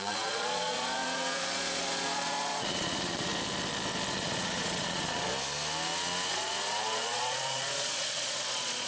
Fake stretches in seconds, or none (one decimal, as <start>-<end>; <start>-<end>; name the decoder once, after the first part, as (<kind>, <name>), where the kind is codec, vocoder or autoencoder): 0.0-3.3 (vocoder, Vocos); 4.1-5.3; 6.3-8.9